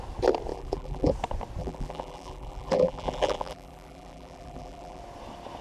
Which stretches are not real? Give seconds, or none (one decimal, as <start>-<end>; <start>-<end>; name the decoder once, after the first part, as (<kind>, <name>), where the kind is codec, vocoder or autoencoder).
0.5-1.1 (vocoder, BigVGAN v2); 1.6-5.0

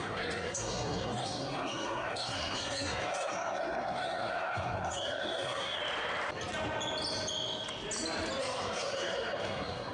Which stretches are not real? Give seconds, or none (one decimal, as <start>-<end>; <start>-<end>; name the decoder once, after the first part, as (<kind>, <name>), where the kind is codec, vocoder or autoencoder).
0.0-5.8 (codec, SNAC); 8.4-9.9

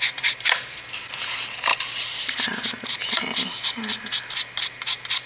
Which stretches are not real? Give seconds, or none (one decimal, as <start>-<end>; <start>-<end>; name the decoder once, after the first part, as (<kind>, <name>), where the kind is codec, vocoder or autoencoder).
none